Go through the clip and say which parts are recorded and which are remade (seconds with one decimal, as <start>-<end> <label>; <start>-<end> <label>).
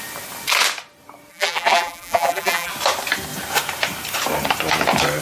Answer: 0.0-1.3 recorded; 1.3-2.7 remade; 2.7-5.2 recorded